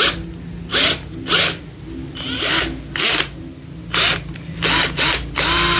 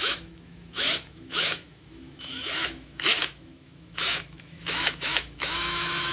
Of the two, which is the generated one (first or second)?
second